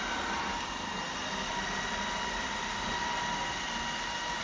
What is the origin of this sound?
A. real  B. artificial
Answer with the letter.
A